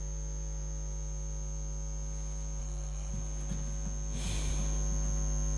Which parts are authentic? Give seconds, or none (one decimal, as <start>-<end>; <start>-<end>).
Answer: 0.0-2.6; 3.1-5.6

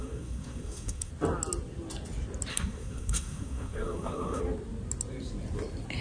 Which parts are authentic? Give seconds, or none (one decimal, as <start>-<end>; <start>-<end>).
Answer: 1.1-2.5; 4.4-6.0

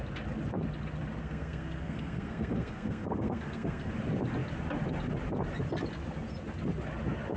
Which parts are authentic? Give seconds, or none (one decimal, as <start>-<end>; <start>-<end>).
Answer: 0.0-1.2; 3.9-7.4